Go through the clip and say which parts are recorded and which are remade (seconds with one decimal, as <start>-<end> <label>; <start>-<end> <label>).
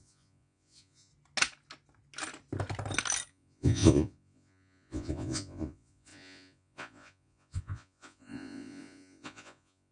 0.0-1.1 remade; 1.1-3.3 recorded; 3.3-9.9 remade